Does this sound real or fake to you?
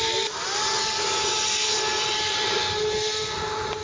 real